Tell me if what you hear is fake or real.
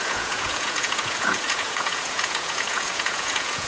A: fake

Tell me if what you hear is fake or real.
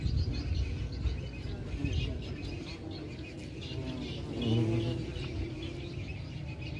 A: real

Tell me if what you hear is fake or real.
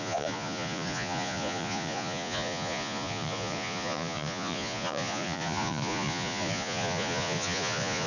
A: fake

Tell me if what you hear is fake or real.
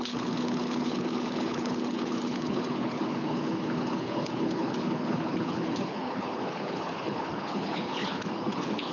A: fake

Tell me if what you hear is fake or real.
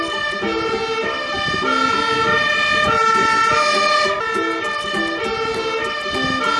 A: real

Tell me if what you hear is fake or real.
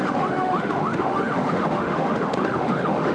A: fake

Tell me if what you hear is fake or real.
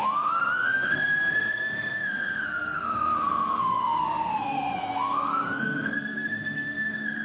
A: fake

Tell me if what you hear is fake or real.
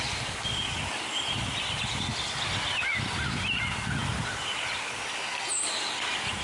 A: real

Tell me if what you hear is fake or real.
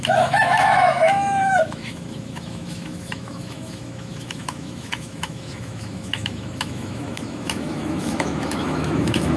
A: fake